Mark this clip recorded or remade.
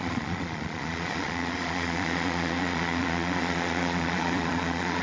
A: remade